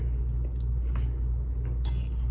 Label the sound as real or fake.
real